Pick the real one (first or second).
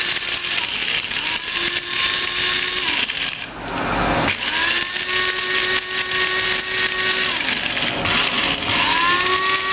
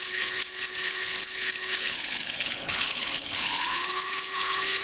first